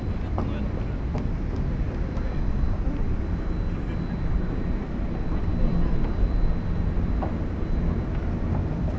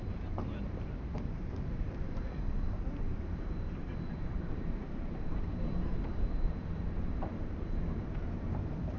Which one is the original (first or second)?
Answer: first